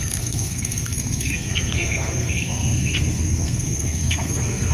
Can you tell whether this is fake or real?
fake